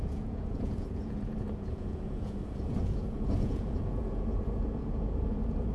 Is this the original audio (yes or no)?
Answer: no